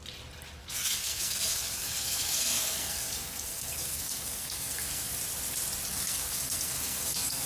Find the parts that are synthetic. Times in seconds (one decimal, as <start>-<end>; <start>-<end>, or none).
0.6-5.1; 5.9-7.5